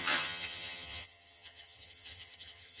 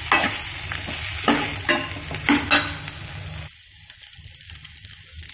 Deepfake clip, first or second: first